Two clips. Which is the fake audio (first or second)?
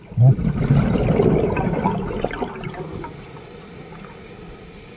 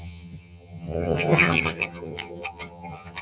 second